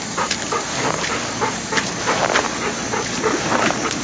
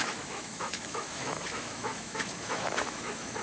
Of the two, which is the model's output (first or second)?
second